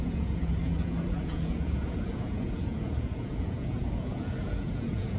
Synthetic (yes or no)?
yes